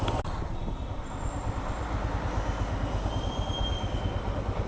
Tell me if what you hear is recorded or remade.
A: recorded